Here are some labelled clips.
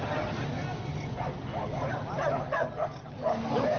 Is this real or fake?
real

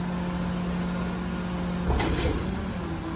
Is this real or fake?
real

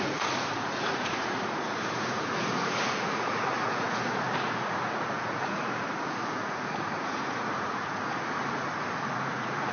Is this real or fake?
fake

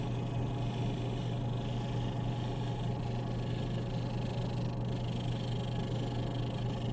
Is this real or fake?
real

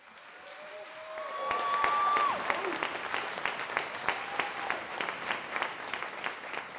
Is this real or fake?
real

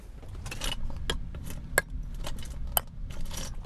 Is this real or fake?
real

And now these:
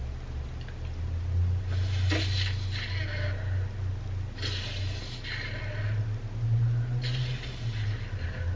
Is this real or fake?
real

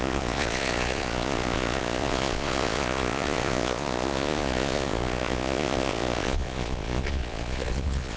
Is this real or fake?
fake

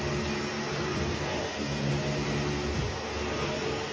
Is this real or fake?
real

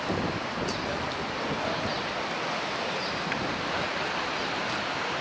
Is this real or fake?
real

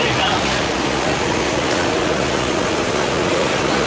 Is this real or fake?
fake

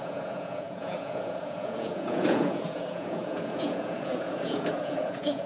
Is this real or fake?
fake